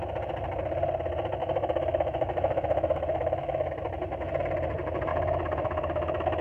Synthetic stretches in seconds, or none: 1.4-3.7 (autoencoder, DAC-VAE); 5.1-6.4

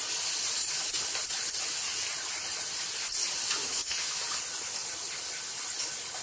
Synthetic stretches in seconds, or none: 3.6-4.2 (autoencoder, DAC-VAE)